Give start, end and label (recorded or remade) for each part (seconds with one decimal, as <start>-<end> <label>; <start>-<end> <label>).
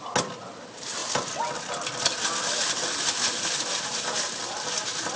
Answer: 0.0-5.2 recorded